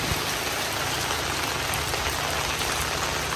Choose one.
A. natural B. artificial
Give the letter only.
A